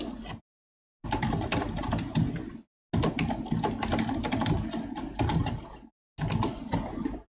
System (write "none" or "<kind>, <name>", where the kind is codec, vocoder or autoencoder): none